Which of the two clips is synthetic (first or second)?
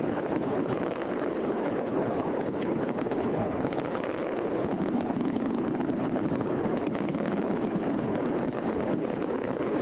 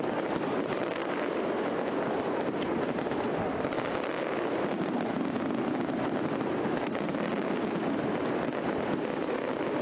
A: first